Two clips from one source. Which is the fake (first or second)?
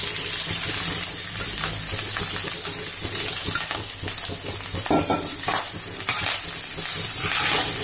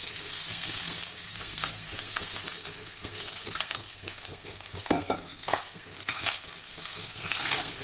second